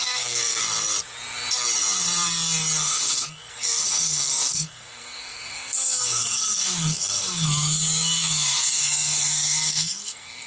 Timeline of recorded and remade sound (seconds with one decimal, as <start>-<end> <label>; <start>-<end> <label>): 0.0-0.6 remade; 0.6-2.8 recorded; 2.8-10.5 remade